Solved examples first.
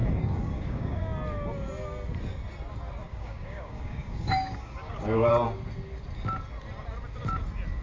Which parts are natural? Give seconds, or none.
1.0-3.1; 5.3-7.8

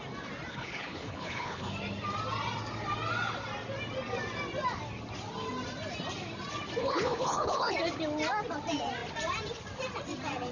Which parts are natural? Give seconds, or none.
0.0-0.5; 1.7-6.8; 7.7-10.5

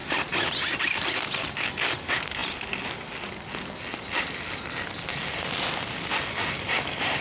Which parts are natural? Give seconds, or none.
0.0-7.2